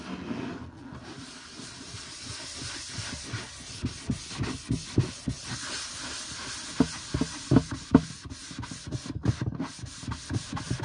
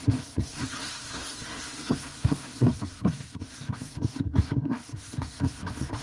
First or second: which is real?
first